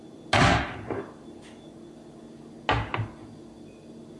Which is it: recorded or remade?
recorded